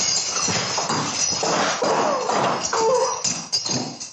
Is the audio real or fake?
real